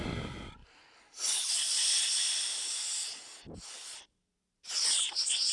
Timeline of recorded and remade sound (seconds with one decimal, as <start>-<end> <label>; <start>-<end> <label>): 0.0-5.5 recorded